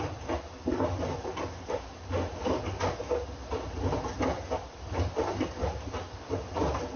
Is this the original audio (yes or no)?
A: yes